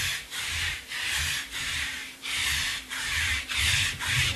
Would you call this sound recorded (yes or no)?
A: no